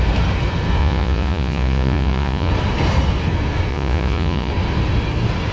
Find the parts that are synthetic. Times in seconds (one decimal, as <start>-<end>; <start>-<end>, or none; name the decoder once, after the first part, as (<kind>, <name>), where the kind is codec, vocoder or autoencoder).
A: 0.8-2.5 (vocoder, Vocos); 3.7-4.5